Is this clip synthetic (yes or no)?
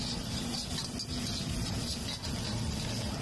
no